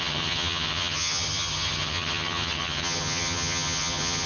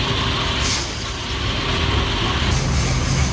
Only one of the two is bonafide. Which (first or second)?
second